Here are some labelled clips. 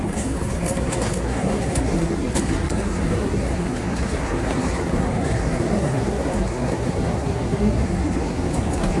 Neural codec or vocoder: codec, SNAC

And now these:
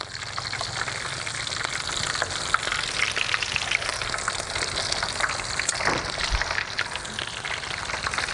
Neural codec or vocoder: none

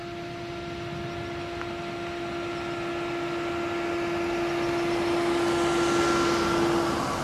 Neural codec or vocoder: none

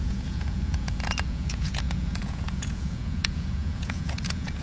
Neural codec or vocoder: vocoder, Vocos